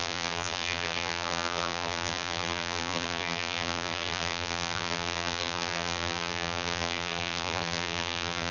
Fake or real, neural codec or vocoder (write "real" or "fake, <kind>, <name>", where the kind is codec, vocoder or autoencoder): fake, vocoder, BigVGAN v2